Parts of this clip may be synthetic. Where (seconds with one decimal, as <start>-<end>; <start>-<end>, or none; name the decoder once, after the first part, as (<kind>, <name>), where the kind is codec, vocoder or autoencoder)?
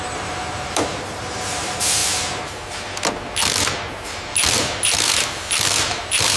0.0-2.0 (vocoder, BigVGAN v2); 5.8-6.4